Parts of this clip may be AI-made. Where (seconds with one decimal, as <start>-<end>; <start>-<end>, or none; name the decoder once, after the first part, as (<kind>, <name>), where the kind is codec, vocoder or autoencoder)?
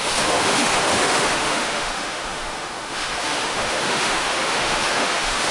0.0-5.5 (autoencoder, DAC-VAE)